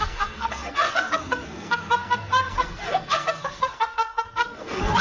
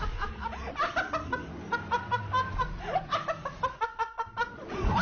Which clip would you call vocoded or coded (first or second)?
first